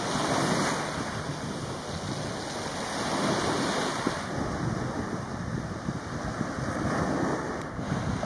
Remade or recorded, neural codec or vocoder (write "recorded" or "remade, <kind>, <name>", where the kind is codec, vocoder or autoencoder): recorded